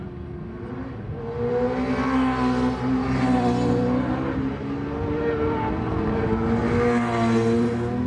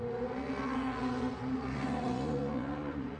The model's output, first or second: second